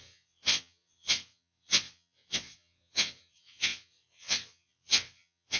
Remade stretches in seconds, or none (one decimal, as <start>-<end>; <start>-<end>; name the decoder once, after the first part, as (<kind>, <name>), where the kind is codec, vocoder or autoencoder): 0.0-5.6 (vocoder, WaveNeXt)

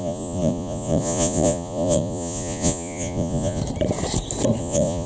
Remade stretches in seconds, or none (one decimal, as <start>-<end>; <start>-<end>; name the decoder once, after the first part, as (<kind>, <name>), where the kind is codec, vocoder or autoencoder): 0.0-3.6 (vocoder, Vocos); 4.6-5.1

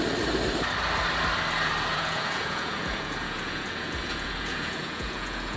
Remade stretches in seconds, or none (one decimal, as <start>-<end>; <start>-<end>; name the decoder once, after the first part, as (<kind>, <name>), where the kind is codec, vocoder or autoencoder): 1.9-5.6 (vocoder, Vocos)

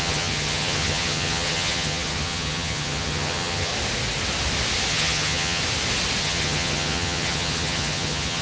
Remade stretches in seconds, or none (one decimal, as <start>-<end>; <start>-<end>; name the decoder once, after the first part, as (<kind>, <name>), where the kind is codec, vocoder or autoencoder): 0.0-3.7 (vocoder, HiFi-GAN); 4.9-5.6; 6.2-8.4

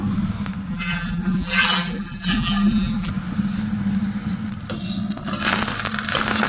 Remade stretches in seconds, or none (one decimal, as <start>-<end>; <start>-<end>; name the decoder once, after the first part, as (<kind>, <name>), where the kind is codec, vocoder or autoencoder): 0.7-3.1 (vocoder, BigVGAN v2)

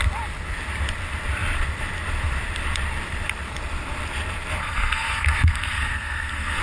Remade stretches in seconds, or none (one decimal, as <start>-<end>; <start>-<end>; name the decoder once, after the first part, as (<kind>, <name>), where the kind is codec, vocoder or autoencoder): 4.6-6.6 (codec, SNAC)

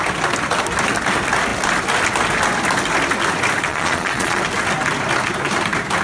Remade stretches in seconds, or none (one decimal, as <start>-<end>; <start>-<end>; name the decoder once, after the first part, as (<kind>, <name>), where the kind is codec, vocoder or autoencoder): 3.7-4.4 (vocoder, Vocos)